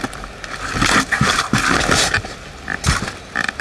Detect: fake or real real